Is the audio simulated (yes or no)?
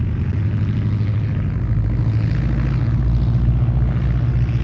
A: no